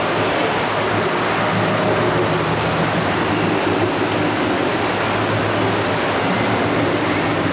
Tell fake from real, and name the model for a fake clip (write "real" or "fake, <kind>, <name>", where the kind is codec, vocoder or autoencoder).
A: real